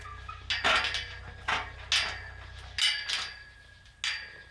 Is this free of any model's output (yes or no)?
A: yes